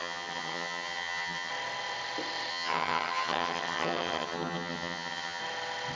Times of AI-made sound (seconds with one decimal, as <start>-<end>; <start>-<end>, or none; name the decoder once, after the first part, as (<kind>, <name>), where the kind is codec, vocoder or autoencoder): 0.0-1.5 (vocoder, HiFi-GAN); 2.5-5.4